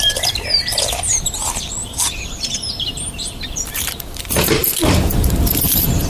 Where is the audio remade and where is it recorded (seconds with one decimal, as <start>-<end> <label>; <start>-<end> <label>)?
0.0-4.6 remade; 4.6-5.6 recorded; 5.6-6.1 remade